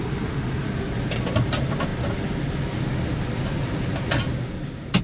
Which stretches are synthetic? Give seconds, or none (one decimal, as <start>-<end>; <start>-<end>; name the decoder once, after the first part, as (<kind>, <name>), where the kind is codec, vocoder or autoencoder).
none